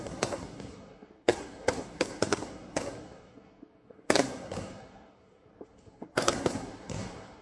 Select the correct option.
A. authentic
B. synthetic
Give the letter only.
B